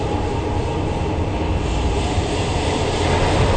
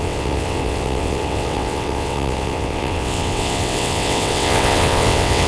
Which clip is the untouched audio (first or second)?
first